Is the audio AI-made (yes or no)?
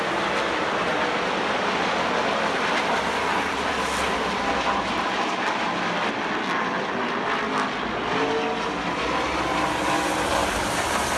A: no